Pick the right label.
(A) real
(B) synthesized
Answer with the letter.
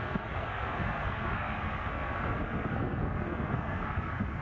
B